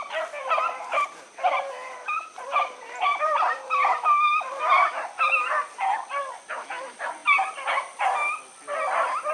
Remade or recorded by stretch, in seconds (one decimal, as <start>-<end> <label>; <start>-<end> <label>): 0.0-0.4 recorded; 0.4-5.0 remade; 5.0-7.2 recorded; 7.2-8.3 remade; 8.3-9.3 recorded